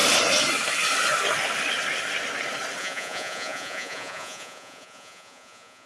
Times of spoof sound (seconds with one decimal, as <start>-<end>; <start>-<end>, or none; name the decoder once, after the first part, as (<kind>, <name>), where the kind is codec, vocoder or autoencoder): 2.8-5.9 (vocoder, Vocos)